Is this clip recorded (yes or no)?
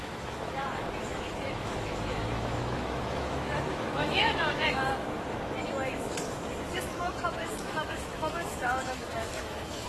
no